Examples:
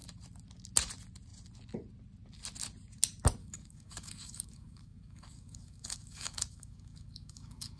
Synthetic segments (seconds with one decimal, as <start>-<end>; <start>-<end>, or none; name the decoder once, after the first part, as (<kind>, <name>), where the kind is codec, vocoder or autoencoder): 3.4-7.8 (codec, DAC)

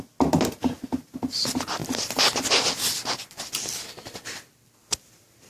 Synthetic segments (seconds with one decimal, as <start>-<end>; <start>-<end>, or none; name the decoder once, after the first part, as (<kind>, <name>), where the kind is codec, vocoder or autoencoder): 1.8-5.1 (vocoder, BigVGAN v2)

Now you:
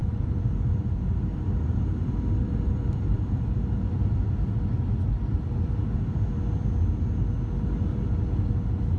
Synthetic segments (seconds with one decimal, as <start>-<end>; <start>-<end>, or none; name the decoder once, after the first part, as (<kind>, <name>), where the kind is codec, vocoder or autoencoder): 0.0-4.2 (vocoder, BigVGAN v2)

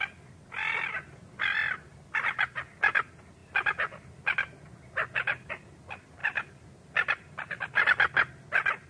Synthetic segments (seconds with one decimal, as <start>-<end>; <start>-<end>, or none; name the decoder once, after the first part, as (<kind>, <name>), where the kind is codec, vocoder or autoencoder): none